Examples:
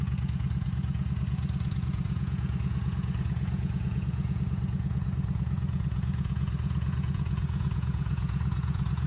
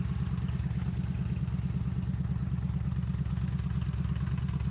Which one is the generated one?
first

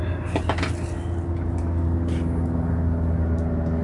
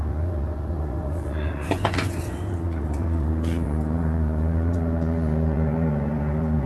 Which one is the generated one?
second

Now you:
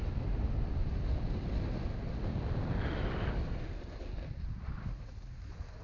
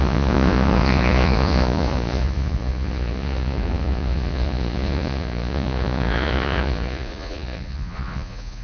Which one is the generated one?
second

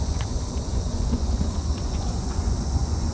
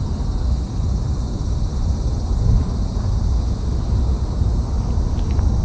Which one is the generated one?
first